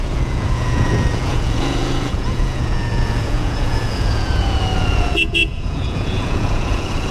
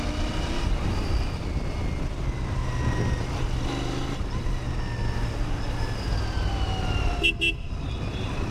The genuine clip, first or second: second